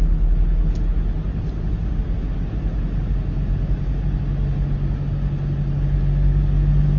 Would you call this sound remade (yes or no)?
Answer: no